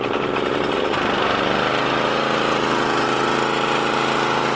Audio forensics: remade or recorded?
recorded